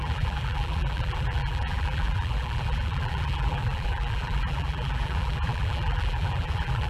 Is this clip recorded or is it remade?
remade